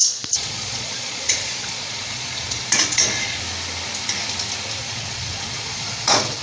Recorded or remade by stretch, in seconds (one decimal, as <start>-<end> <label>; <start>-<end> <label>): 0.0-3.4 remade; 3.4-4.8 recorded; 4.8-6.4 remade

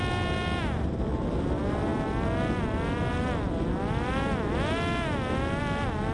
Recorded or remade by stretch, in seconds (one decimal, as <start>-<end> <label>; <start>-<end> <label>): 0.0-6.1 recorded